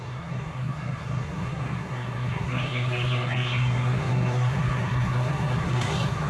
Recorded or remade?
remade